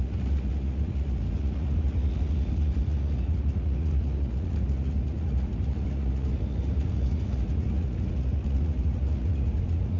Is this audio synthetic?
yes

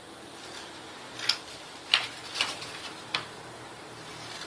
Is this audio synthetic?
no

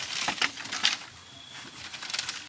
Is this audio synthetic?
no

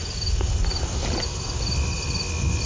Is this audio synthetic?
no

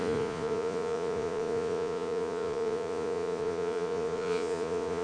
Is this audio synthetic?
yes